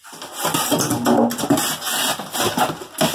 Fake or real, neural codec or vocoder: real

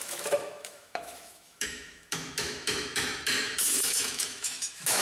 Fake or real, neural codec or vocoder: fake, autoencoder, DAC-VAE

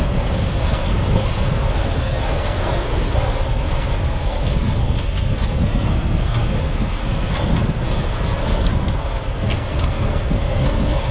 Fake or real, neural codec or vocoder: fake, codec, SNAC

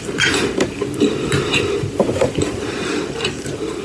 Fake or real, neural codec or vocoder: fake, vocoder, BigVGAN v2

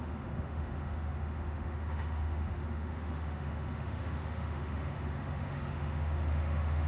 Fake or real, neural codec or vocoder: fake, autoencoder, DAC-VAE